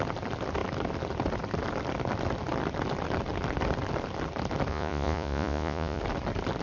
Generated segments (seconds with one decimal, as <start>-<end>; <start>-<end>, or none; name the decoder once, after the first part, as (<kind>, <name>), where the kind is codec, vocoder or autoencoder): 4.7-6.0 (vocoder, Vocos)